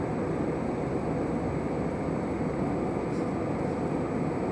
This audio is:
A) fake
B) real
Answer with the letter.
B